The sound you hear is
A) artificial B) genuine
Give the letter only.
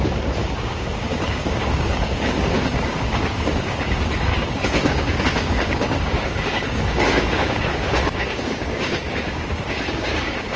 A